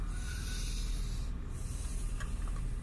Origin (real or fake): real